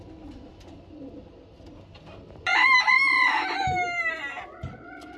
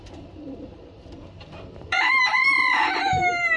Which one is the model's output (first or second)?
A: second